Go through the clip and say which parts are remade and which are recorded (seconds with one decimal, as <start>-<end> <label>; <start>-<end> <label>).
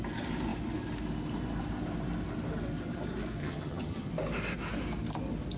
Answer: 0.0-3.4 recorded; 3.4-4.1 remade; 4.1-5.6 recorded